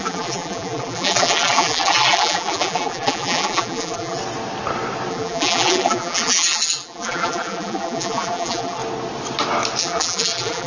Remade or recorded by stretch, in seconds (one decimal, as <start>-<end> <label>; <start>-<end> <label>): 0.0-4.2 remade; 4.2-5.1 recorded; 5.1-8.8 remade; 8.8-9.8 recorded; 9.8-10.7 remade